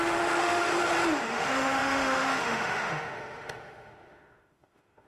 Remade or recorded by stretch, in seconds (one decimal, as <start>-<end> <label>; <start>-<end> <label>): 0.0-0.7 remade; 0.7-1.2 recorded; 1.2-5.1 remade